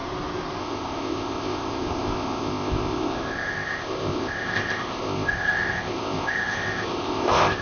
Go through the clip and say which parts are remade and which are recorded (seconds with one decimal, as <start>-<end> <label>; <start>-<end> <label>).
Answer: 0.0-0.6 recorded; 0.6-7.6 remade